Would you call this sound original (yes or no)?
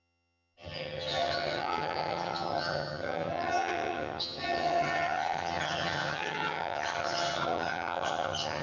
no